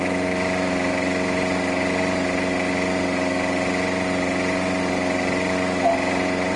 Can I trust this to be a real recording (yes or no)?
yes